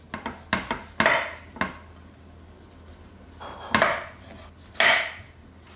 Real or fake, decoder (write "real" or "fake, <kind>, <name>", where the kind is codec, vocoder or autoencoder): real